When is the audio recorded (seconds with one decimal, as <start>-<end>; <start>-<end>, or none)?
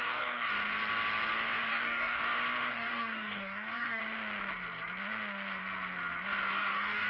0.5-1.7; 2.2-2.7; 4.0-6.5